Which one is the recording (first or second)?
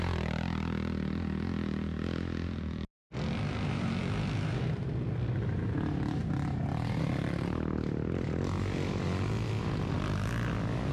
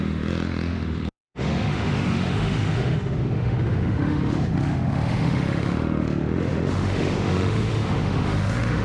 first